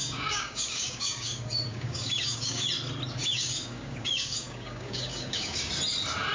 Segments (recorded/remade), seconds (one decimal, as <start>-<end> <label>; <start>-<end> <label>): 0.0-2.7 remade; 2.7-3.2 recorded; 3.2-5.7 remade; 5.7-6.3 recorded